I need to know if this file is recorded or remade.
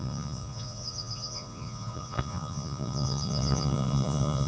remade